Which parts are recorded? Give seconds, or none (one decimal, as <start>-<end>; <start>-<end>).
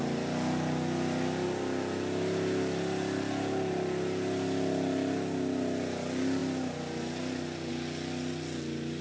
0.0-9.0